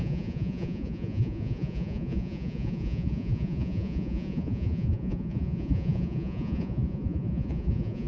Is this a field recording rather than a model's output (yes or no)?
no